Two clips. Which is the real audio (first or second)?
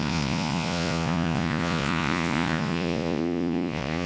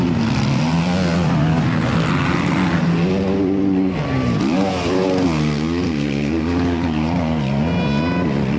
second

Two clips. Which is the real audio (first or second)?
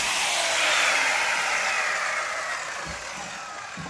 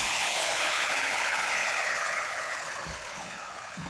first